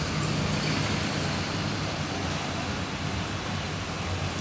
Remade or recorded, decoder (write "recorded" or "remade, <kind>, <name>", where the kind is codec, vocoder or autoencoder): recorded